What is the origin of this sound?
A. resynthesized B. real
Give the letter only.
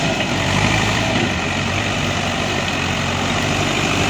A